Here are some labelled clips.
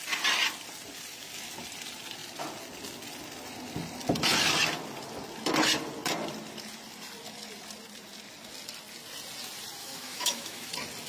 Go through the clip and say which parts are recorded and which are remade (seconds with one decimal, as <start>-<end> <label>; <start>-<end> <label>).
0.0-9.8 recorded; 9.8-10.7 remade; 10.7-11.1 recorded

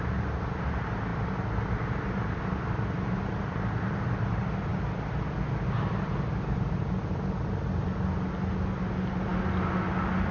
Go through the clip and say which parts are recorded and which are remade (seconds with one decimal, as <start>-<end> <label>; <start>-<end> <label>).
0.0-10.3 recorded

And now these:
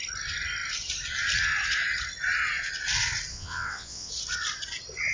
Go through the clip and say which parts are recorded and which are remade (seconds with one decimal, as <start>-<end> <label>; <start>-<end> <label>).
0.0-3.3 recorded; 3.3-4.1 remade; 4.1-5.1 recorded